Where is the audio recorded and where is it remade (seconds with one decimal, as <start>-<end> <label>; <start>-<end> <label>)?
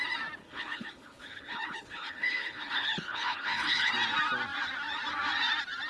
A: 0.0-0.4 recorded; 0.4-3.9 remade; 3.9-5.9 recorded